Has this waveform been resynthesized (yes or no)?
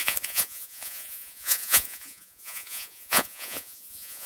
yes